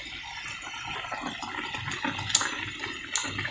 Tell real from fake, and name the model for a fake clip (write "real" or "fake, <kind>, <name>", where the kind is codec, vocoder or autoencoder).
real